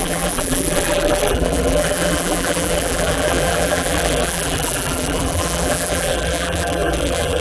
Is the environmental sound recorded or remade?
remade